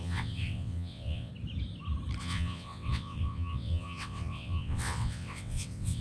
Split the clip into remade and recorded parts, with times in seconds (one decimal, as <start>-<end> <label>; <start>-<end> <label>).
0.0-1.3 remade; 1.3-2.2 recorded; 2.2-6.0 remade